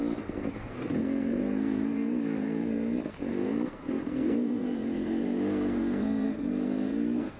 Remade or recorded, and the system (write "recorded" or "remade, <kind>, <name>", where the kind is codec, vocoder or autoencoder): remade, codec, SNAC